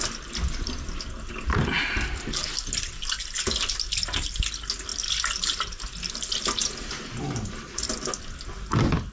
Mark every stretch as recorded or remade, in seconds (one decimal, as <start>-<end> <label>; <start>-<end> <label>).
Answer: 0.0-9.1 recorded